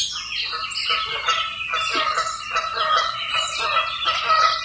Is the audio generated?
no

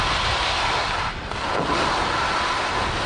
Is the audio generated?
no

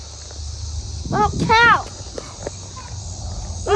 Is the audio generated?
no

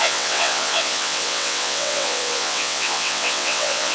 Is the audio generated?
yes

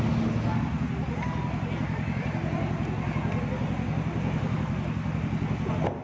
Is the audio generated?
no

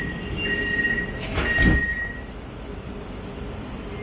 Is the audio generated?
no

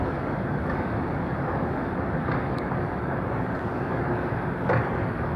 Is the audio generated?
yes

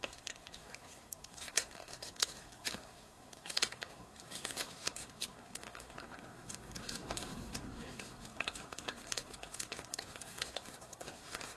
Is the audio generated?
yes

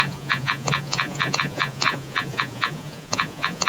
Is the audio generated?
yes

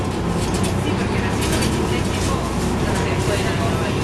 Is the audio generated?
no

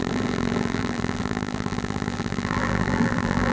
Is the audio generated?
yes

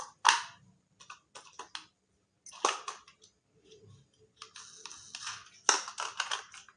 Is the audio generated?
no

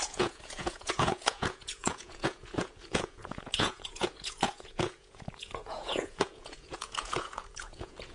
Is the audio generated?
yes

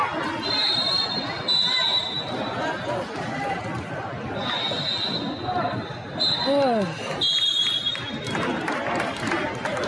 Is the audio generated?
no